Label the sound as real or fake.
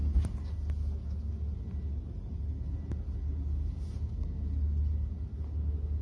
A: real